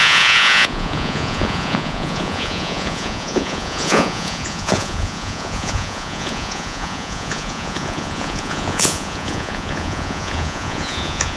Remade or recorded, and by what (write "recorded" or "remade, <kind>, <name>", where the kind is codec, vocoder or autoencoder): remade, vocoder, Vocos